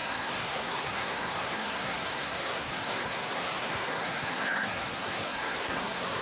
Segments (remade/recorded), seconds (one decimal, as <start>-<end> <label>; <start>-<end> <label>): 0.0-6.2 remade